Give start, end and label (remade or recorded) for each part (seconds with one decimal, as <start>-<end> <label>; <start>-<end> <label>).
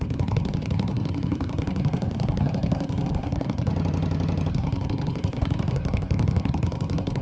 0.0-3.7 remade; 3.7-4.5 recorded; 4.5-7.2 remade